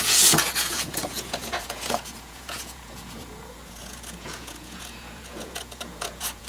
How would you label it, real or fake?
fake